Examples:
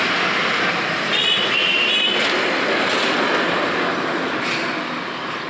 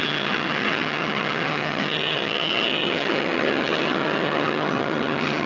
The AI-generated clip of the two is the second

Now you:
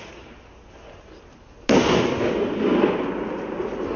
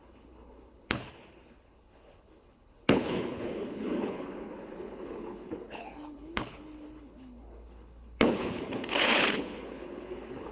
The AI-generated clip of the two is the second